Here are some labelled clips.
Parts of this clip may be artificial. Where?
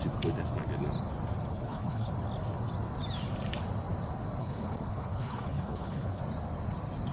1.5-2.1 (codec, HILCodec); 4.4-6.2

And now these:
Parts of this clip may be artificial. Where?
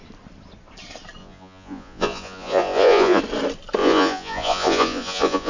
1.2-3.2 (vocoder, Vocos); 3.8-5.5